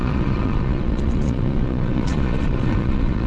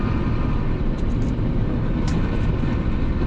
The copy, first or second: first